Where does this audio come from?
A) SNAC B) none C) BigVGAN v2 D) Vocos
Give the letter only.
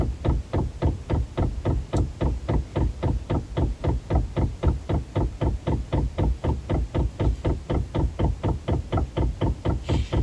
B